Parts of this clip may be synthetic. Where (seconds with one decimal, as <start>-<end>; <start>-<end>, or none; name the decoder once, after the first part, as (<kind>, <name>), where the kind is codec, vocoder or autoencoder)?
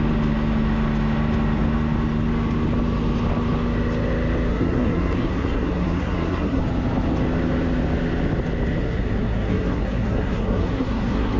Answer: 4.5-6.6 (codec, SNAC); 8.8-11.4